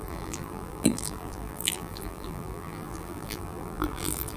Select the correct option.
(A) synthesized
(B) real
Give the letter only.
A